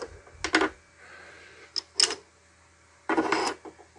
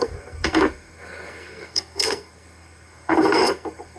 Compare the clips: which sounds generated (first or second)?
second